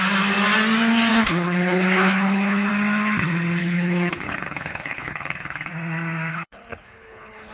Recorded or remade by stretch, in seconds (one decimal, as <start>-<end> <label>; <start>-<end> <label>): 0.0-1.1 recorded; 1.1-2.7 remade; 2.7-3.6 recorded; 3.6-5.7 remade; 5.7-6.3 recorded; 6.3-7.5 remade